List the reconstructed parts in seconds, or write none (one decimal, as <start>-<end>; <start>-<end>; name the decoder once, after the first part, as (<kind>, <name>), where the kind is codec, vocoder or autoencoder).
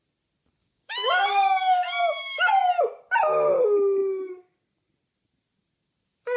0.6-2.5 (codec, DAC)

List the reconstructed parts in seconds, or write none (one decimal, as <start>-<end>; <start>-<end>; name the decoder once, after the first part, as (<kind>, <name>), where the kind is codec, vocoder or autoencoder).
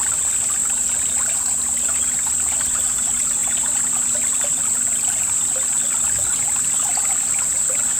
none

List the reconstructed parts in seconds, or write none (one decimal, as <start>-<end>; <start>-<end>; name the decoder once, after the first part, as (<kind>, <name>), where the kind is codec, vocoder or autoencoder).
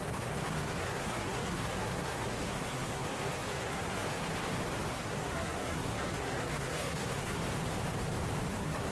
0.0-4.3 (codec, SNAC); 4.9-7.4; 8.5-8.9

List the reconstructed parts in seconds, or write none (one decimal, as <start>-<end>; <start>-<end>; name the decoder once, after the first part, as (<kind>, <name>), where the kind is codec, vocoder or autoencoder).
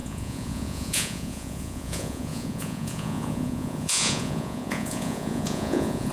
0.0-6.1 (vocoder, Vocos)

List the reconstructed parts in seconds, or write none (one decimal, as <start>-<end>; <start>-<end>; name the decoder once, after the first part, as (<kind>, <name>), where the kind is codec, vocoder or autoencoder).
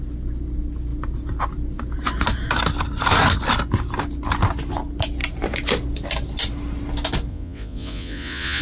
7.3-8.6 (vocoder, Vocos)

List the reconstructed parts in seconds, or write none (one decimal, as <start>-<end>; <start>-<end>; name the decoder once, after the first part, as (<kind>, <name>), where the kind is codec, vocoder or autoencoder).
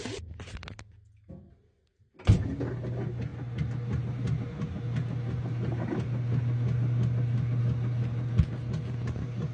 none